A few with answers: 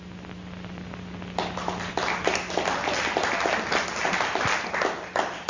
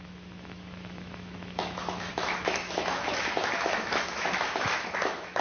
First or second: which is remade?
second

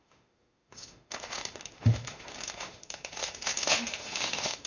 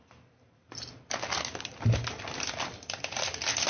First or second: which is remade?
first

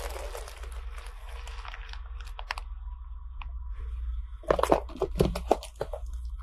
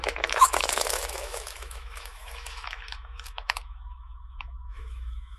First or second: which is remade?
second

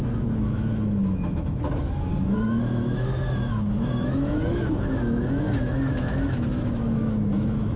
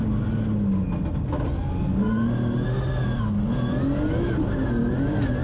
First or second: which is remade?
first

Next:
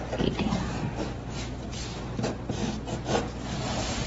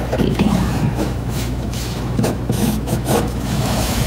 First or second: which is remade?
second